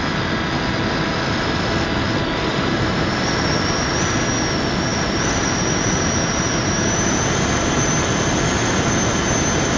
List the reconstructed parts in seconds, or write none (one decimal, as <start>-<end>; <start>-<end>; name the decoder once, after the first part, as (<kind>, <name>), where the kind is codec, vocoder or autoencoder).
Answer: 2.5-3.3 (vocoder, BigVGAN v2); 4.9-7.9